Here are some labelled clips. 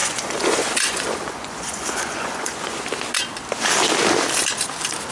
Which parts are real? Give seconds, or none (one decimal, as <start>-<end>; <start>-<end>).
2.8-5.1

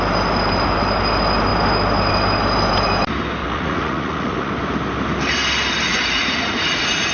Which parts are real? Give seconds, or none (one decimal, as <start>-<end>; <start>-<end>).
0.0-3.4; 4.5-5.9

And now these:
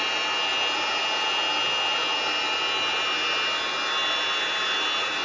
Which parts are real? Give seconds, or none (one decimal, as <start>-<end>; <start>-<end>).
0.0-5.2

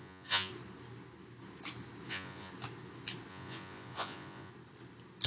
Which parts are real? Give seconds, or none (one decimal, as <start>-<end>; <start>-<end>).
0.5-2.1; 2.5-3.3; 4.5-5.3

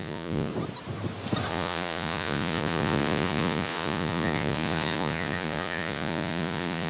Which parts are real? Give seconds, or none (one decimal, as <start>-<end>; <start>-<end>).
0.5-1.5

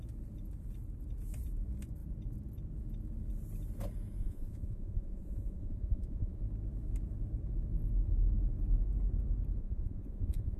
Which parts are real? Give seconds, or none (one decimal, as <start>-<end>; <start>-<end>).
0.0-4.2; 6.4-9.6

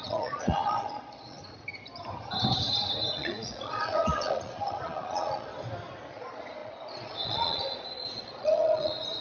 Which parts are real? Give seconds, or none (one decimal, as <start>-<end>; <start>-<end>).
1.4-3.1; 5.5-6.1